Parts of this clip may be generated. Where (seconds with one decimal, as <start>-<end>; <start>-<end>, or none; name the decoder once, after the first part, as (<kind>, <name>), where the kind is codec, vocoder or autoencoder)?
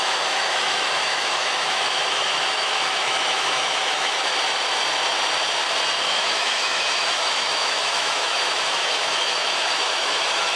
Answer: 0.0-4.3 (autoencoder, DAC-VAE); 6.0-10.6